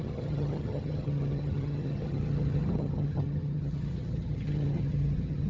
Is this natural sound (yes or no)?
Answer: no